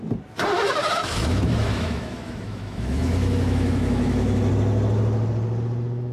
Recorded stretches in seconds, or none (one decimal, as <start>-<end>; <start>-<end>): 0.0-0.8; 4.5-6.1